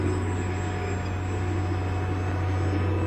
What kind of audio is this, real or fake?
real